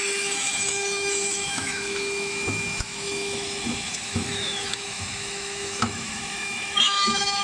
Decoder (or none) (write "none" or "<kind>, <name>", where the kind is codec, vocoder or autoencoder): autoencoder, DAC-VAE